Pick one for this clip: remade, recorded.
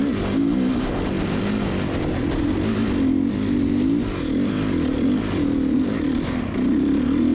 recorded